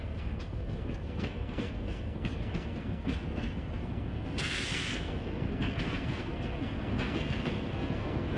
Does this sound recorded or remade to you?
remade